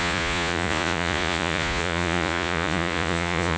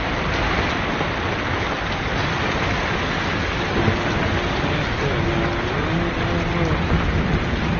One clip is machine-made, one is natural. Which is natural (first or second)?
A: second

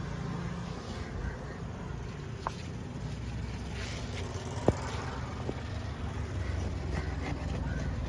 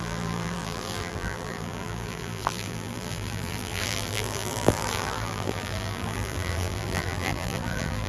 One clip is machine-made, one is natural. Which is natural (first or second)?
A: first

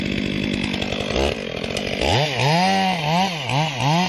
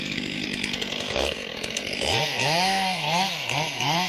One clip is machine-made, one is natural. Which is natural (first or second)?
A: first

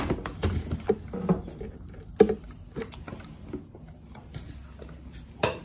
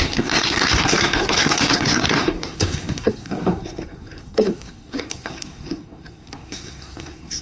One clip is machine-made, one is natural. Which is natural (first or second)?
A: first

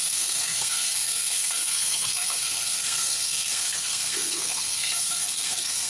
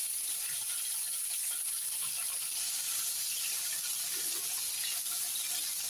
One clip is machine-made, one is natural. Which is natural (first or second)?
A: second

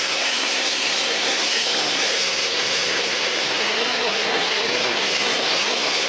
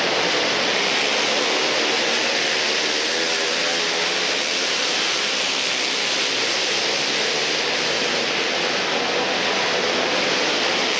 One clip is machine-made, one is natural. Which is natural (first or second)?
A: second